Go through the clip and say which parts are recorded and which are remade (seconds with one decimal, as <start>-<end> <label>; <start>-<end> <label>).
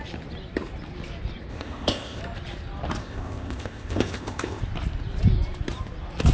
0.0-1.5 recorded; 1.5-2.2 remade; 2.2-3.0 recorded; 3.0-4.6 remade; 4.6-6.3 recorded